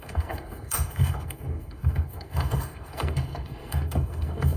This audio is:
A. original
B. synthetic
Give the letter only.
B